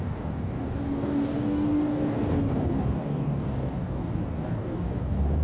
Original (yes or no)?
no